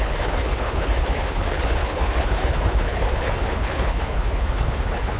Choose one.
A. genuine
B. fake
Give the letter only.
B